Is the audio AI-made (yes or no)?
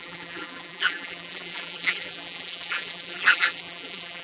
yes